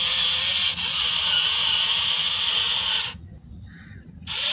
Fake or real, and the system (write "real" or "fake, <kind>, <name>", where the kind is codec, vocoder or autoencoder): fake, vocoder, Vocos